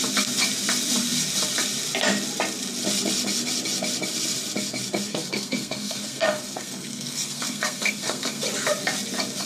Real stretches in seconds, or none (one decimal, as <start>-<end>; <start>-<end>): 0.0-5.1; 8.4-9.5